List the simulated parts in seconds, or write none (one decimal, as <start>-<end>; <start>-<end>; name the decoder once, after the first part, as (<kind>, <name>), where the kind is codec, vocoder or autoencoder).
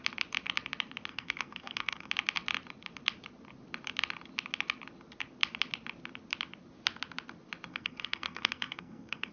1.1-2.1 (codec, SNAC); 7.7-9.3